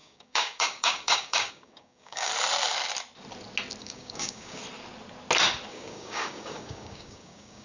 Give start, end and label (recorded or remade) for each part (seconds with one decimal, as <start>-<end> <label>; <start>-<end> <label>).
0.0-2.3 remade; 2.3-3.8 recorded; 3.8-4.6 remade; 4.6-5.7 recorded; 5.7-7.6 remade